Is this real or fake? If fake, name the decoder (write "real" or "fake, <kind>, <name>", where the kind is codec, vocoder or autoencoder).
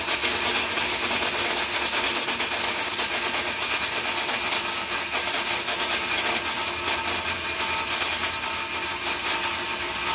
real